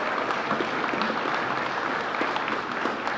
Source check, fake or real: real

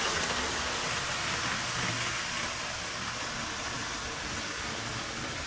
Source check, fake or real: real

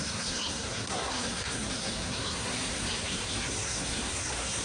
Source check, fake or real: fake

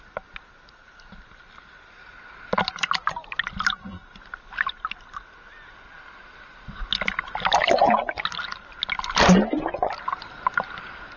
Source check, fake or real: real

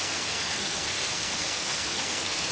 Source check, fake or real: fake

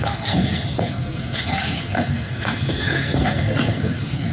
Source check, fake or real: fake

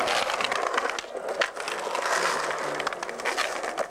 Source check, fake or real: real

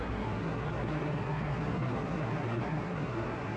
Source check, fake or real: fake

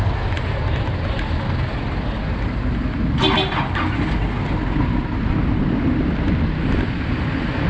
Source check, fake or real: real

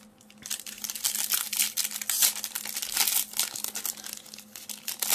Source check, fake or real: real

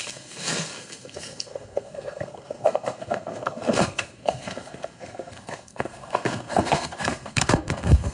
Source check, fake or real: fake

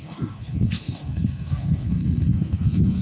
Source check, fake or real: fake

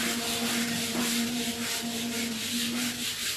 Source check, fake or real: real